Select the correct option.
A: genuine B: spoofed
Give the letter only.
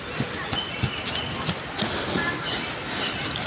A